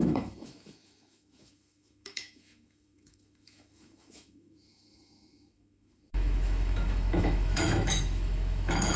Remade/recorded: remade